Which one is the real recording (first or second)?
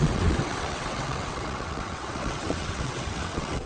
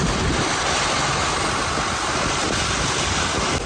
second